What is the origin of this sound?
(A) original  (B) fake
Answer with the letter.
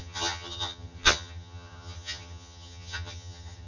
B